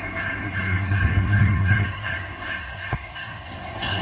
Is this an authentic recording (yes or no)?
no